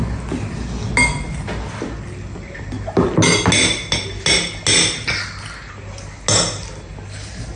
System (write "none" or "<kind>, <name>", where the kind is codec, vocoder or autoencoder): none